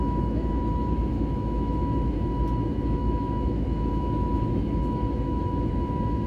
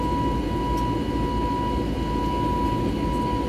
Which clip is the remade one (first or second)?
first